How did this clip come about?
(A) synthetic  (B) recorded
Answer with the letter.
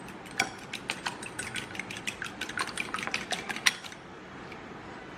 B